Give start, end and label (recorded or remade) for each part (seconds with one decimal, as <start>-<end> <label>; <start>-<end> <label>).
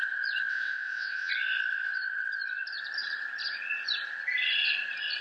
0.0-0.5 recorded; 0.5-1.3 remade; 1.3-5.2 recorded